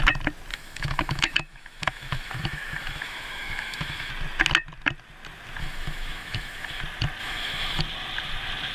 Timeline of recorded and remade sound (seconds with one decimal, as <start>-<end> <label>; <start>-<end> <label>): 0.0-0.5 recorded; 0.5-4.1 remade; 4.1-5.6 recorded; 5.6-6.8 remade; 6.8-7.2 recorded; 7.2-7.8 remade; 7.8-8.7 recorded